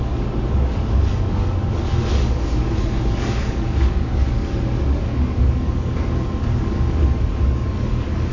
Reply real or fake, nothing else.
fake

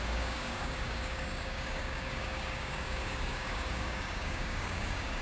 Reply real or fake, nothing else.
fake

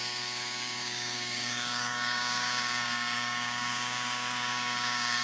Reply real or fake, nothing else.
fake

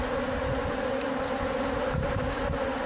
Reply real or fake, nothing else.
real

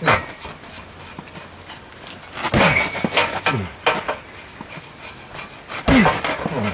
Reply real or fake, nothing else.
real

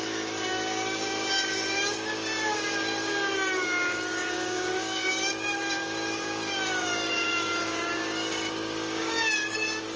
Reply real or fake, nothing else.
fake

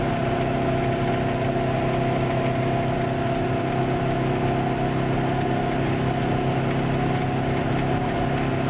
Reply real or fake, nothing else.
real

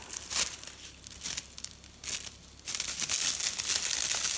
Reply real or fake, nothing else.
real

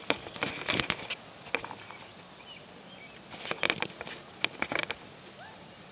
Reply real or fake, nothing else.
real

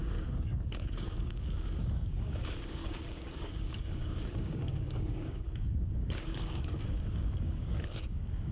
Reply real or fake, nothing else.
fake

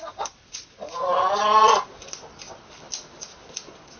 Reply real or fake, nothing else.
real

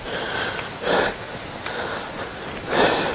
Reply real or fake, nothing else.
real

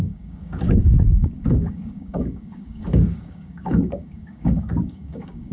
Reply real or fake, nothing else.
fake